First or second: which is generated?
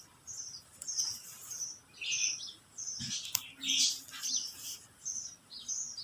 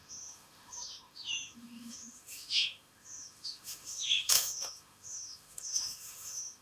second